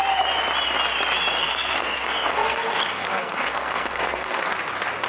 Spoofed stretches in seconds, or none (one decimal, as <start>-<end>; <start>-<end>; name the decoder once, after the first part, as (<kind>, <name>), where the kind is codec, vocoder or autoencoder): 1.4-4.5 (codec, SNAC)